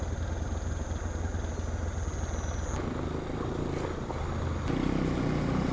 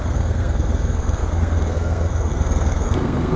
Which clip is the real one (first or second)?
first